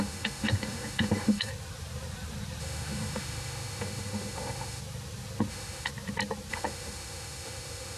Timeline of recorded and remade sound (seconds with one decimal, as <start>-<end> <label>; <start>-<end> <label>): 0.0-1.5 remade; 1.5-2.6 recorded; 2.6-4.8 remade; 4.8-5.5 recorded; 5.5-5.9 remade; 5.9-6.5 recorded; 6.5-8.0 remade

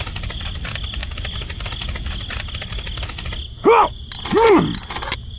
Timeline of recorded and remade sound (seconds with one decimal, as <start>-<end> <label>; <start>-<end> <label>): 0.0-5.4 recorded

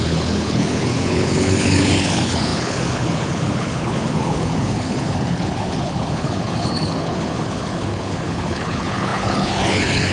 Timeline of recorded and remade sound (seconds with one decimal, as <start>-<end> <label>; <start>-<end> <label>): 0.0-10.1 remade

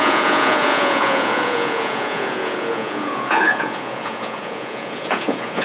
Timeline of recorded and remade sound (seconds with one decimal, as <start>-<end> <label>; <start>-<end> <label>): 0.0-5.6 remade

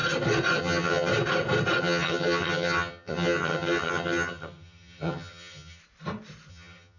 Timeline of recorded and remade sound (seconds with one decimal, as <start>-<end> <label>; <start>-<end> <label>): 0.0-0.6 recorded; 0.6-1.1 remade; 1.1-1.8 recorded; 1.8-5.8 remade; 5.8-6.5 recorded; 6.5-7.0 remade

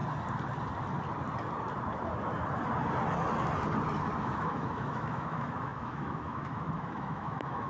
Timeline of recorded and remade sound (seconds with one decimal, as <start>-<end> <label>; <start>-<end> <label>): 0.0-4.2 recorded; 4.2-7.7 remade